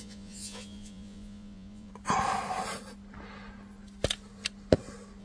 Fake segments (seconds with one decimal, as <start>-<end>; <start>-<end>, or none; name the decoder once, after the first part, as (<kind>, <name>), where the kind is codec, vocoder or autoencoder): 0.0-1.9 (vocoder, Vocos)